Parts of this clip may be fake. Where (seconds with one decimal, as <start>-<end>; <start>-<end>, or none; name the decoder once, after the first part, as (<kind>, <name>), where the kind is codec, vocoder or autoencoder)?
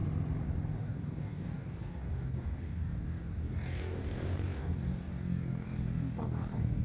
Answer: 0.7-6.8 (codec, DAC)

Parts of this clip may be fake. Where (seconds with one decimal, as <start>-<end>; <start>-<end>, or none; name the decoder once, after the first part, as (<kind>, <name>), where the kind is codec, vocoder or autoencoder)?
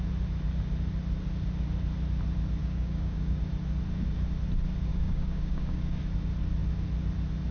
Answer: 2.6-3.4 (codec, DAC); 4.9-6.0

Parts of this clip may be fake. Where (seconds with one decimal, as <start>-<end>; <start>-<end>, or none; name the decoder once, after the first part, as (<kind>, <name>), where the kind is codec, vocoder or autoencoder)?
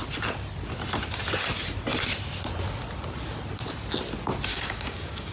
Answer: 4.5-5.3 (codec, DAC)